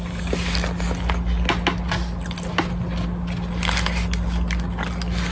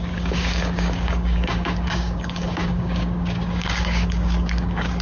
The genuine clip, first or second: first